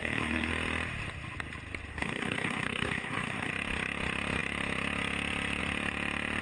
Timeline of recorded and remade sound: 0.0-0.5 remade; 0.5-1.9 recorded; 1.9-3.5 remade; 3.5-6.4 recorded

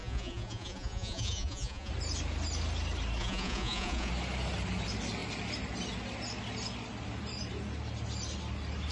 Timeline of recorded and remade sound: 0.0-1.9 remade; 1.9-3.2 recorded; 3.2-4.1 remade; 4.1-8.9 recorded

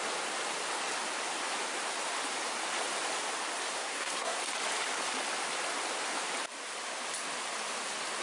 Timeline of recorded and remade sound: 0.0-3.8 recorded; 3.8-4.4 remade; 4.4-8.2 recorded

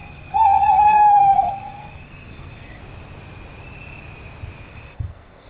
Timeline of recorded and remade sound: 0.0-2.8 remade; 2.8-4.7 recorded; 4.7-5.5 remade

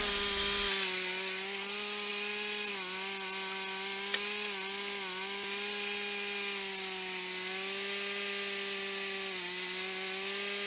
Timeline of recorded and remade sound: 0.0-10.7 recorded

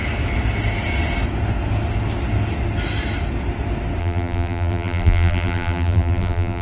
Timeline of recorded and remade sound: 0.0-4.0 recorded; 4.0-6.6 remade